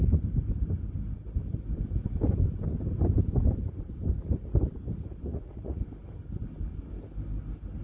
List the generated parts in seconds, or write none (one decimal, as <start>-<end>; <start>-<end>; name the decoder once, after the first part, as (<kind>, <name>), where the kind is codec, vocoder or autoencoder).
5.3-5.8 (vocoder, Vocos)